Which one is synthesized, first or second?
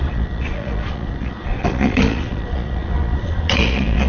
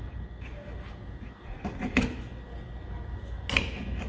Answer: first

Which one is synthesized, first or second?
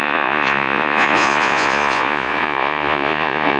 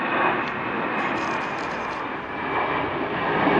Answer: first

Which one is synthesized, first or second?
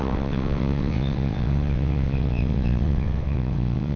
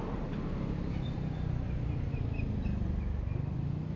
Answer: first